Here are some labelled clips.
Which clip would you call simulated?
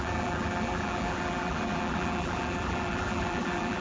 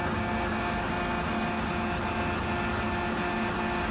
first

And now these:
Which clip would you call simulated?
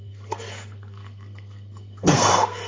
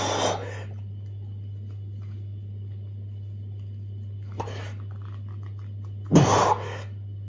first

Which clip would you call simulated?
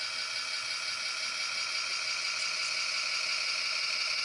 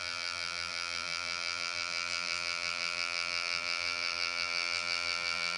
second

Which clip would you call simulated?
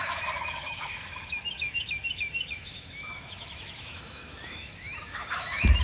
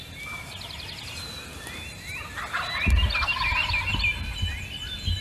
first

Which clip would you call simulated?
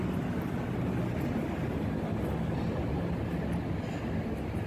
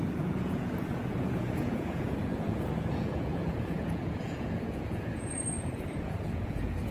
second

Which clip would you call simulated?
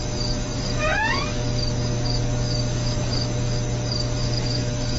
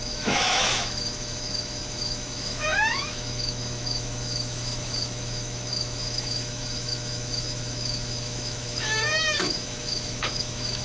second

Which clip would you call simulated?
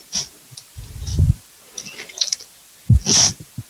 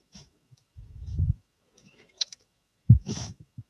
second